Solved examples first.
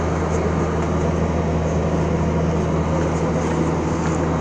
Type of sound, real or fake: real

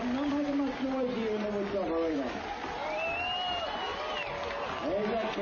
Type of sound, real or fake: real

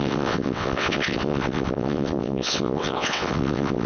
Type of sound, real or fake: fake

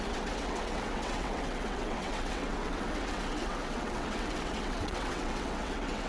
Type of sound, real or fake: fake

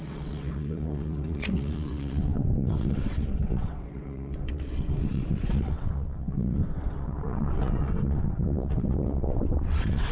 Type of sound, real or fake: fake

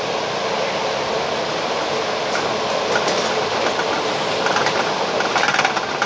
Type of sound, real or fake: real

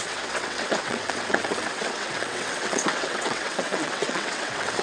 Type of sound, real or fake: fake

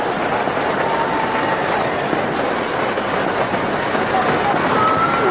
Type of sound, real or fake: real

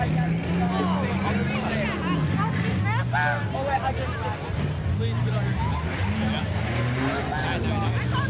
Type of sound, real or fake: real